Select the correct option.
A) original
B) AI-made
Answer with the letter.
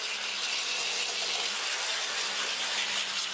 A